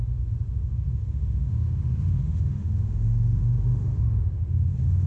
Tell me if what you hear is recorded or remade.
remade